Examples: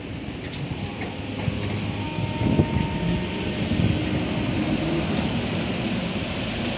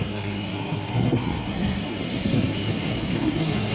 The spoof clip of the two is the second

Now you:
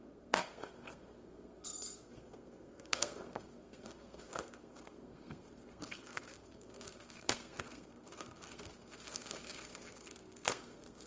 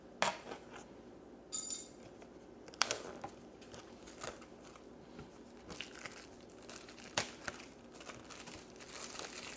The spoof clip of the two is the first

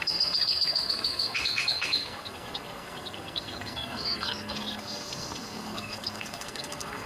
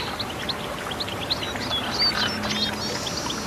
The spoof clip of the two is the first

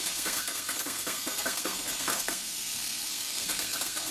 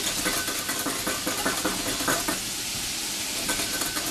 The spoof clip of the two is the first